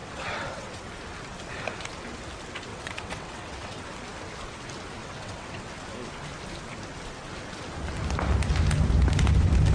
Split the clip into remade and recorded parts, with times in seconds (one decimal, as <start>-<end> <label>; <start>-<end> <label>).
0.0-0.8 remade; 0.8-2.7 recorded; 2.7-3.8 remade; 3.8-5.0 recorded; 5.0-5.7 remade; 5.7-9.7 recorded